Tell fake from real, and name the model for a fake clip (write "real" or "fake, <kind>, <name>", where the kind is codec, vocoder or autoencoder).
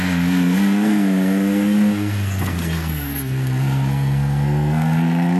fake, codec, SNAC